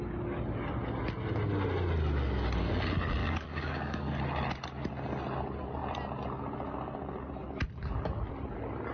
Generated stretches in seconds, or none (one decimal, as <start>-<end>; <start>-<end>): 3.2-4.2